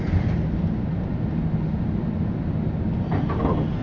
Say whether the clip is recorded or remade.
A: recorded